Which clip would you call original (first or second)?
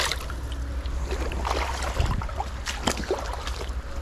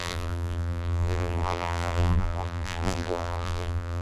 first